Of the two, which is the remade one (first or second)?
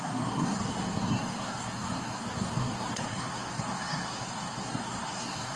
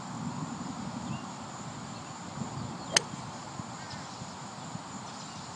first